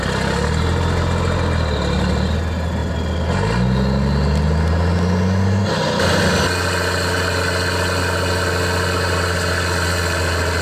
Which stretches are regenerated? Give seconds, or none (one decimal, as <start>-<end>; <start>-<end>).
none